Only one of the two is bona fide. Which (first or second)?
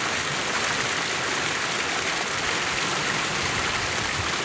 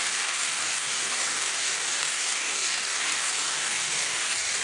first